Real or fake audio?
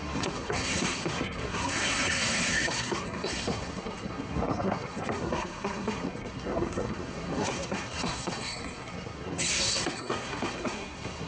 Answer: fake